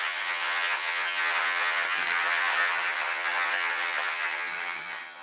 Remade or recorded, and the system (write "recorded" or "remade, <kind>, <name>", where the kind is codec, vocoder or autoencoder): remade, vocoder, HiFi-GAN